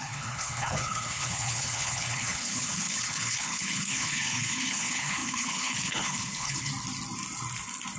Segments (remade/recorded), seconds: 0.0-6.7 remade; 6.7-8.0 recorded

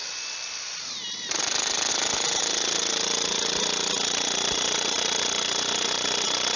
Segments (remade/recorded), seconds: 0.0-6.6 recorded

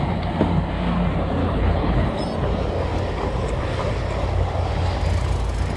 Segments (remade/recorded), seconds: 0.0-1.4 recorded; 1.4-2.2 remade; 2.2-5.8 recorded

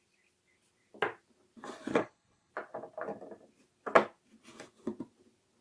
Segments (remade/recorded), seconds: 0.0-1.9 recorded; 1.9-2.5 remade; 2.5-5.6 recorded

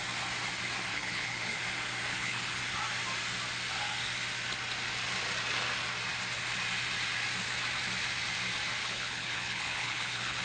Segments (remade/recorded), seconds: 0.0-0.9 recorded; 0.9-1.6 remade; 1.6-2.1 recorded; 2.1-2.6 remade; 2.6-8.8 recorded; 8.8-10.4 remade